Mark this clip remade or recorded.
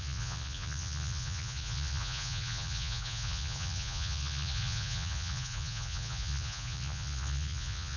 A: remade